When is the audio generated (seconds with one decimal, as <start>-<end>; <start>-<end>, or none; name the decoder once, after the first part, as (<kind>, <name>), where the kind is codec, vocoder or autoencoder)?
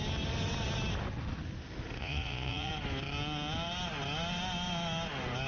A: 2.0-2.7 (vocoder, Vocos)